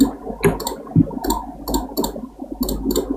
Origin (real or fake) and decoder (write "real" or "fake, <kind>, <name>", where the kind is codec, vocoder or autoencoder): real